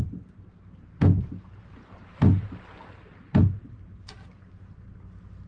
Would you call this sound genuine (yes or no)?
yes